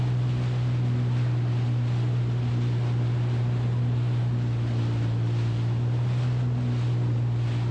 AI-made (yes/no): no